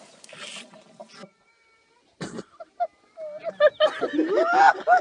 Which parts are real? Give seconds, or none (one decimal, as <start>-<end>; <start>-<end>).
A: 0.0-5.0